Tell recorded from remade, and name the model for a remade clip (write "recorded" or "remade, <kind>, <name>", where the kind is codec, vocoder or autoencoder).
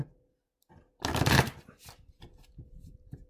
recorded